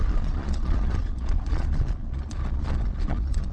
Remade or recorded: remade